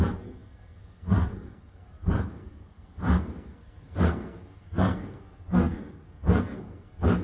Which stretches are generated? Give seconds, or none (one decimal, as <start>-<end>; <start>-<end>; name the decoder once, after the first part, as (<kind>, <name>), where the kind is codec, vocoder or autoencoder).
0.0-7.2 (codec, SNAC)